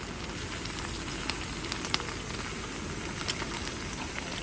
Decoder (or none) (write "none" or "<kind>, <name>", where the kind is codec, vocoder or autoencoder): none